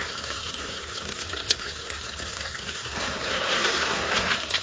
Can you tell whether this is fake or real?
fake